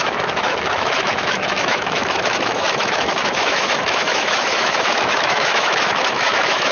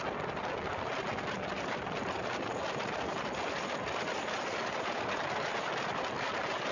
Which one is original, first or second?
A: second